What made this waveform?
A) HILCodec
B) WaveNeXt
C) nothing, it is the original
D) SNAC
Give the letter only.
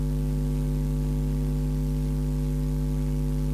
C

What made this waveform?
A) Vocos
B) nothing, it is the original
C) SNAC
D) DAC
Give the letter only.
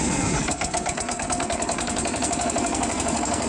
C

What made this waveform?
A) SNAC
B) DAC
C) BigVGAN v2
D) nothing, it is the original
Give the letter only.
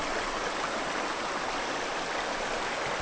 D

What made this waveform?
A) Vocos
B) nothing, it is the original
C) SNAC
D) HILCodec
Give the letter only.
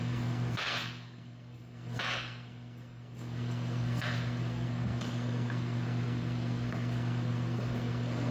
C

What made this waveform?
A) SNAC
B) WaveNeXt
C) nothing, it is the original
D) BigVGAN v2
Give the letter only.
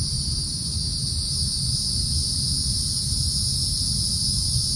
C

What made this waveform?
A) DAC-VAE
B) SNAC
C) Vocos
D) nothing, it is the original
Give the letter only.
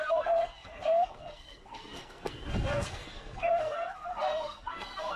B